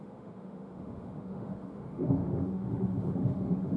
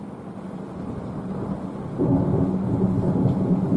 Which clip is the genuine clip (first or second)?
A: second